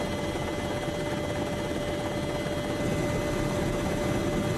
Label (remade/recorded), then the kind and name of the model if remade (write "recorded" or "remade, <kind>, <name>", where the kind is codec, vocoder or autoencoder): recorded